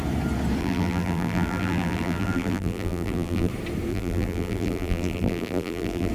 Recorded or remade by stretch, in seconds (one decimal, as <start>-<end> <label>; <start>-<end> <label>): 0.0-0.6 recorded; 0.6-3.5 remade; 3.5-3.9 recorded; 3.9-6.1 remade